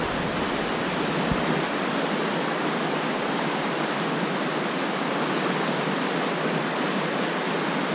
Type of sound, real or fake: real